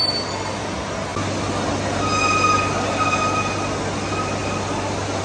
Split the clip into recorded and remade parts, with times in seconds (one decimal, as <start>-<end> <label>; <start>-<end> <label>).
0.0-5.2 recorded